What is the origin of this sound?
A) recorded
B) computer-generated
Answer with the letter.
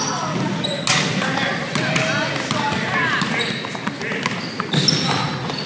A